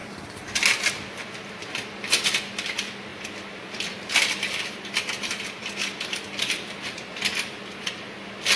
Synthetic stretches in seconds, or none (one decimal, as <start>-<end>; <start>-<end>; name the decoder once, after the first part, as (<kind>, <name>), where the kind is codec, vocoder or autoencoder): none